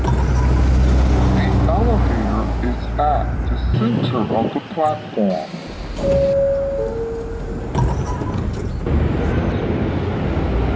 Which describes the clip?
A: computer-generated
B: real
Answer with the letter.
B